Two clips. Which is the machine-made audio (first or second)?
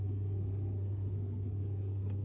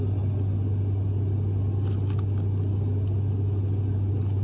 first